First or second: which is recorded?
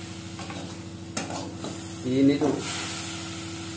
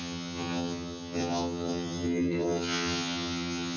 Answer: first